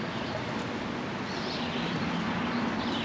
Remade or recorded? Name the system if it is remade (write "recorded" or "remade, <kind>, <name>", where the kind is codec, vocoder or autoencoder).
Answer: recorded